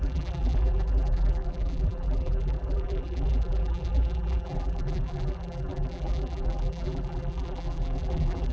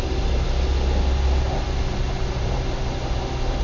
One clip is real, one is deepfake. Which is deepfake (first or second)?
first